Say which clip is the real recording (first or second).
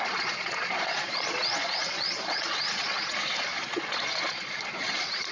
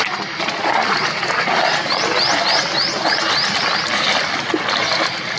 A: second